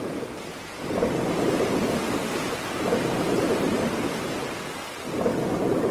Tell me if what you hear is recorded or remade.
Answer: recorded